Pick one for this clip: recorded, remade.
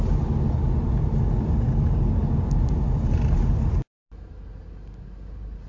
recorded